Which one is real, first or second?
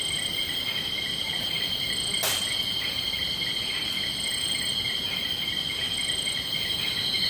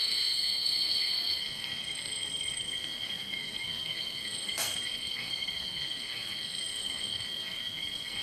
first